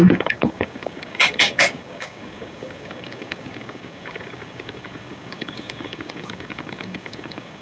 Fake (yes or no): yes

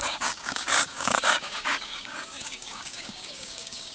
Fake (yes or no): yes